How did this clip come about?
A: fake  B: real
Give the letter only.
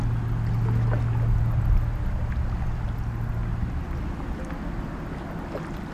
B